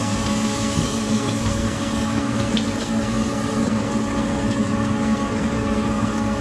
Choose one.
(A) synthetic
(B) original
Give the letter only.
A